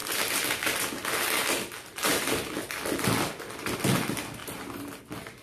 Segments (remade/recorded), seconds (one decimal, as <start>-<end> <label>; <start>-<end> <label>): 0.0-4.4 recorded; 4.4-5.0 remade; 5.0-5.4 recorded